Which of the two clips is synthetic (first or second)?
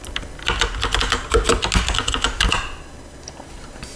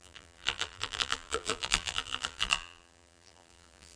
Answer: second